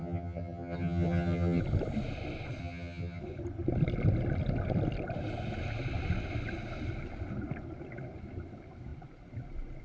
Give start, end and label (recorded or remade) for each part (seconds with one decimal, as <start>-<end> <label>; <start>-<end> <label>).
0.0-1.6 remade; 1.6-2.6 recorded; 2.6-3.2 remade; 3.2-9.8 recorded